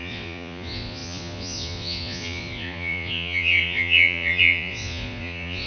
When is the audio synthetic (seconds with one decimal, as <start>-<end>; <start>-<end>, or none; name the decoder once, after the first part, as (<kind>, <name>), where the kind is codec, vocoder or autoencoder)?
0.0-5.7 (vocoder, Vocos)